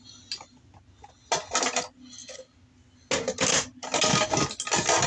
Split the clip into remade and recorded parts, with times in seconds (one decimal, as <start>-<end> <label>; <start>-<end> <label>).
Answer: 0.0-5.1 recorded